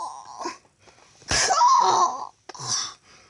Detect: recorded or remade recorded